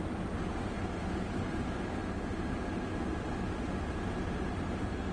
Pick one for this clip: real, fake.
real